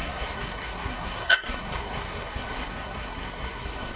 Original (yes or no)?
no